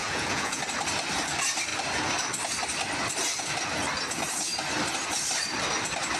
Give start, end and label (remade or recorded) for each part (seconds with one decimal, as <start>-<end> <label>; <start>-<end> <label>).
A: 0.0-0.6 remade; 0.6-6.2 recorded

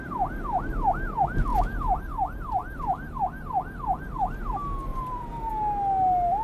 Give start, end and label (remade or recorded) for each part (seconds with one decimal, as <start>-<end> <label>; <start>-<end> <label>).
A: 0.0-1.5 recorded; 1.5-2.0 remade; 2.0-4.9 recorded; 4.9-5.5 remade; 5.5-6.4 recorded

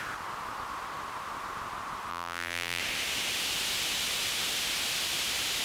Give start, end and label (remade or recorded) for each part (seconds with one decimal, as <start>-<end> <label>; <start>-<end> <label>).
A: 0.0-2.1 recorded; 2.1-2.8 remade; 2.8-5.6 recorded

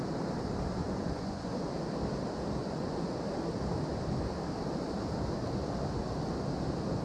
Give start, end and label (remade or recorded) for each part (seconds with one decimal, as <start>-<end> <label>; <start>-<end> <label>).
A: 0.0-0.8 recorded; 0.8-1.7 remade; 1.7-2.6 recorded; 2.6-3.2 remade; 3.2-7.0 recorded

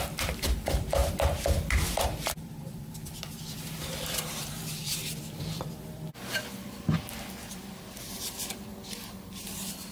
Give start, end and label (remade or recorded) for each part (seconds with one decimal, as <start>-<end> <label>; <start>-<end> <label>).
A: 0.0-9.9 remade

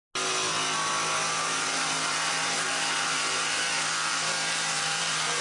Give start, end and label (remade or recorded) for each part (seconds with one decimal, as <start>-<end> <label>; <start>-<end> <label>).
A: 0.0-1.3 recorded; 1.3-5.4 remade